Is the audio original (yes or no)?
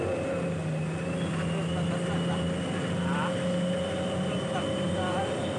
yes